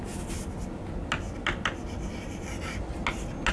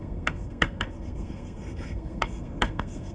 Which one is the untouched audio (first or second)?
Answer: first